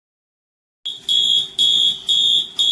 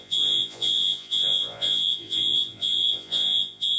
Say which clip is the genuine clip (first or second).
first